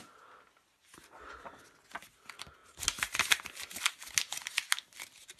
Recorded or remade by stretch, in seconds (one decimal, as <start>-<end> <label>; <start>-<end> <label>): 0.0-5.4 recorded